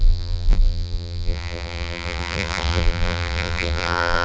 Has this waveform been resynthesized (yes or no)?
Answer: yes